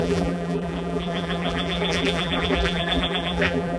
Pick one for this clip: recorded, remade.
remade